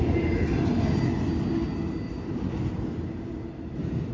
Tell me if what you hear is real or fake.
real